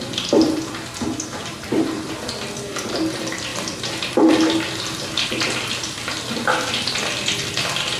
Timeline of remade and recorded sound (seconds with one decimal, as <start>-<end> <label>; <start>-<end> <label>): 0.0-1.4 recorded; 1.4-2.1 remade; 2.1-8.0 recorded